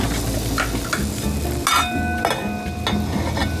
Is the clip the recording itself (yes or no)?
yes